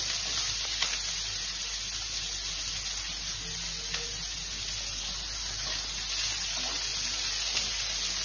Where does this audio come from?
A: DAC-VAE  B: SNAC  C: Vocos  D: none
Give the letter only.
D